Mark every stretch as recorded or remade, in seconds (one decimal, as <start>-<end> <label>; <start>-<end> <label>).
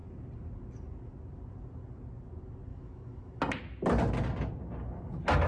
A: 0.0-2.7 recorded; 2.7-3.4 remade; 3.4-5.5 recorded